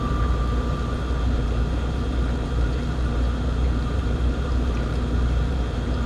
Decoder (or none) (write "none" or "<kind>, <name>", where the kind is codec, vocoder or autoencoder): vocoder, BigVGAN v2